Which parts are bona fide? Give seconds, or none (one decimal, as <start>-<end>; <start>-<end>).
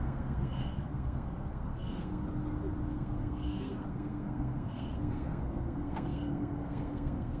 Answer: 2.2-2.9